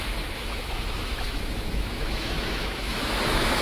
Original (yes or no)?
no